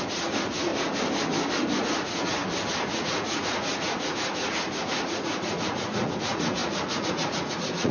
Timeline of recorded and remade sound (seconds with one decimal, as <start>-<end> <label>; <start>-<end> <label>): 0.0-0.7 remade; 0.7-1.8 recorded; 1.8-2.4 remade; 2.4-2.9 recorded; 2.9-7.9 remade